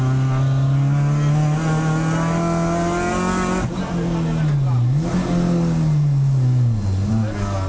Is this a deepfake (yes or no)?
no